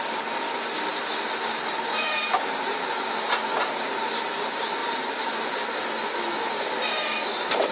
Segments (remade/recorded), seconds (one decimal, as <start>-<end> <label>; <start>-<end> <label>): 0.0-7.7 recorded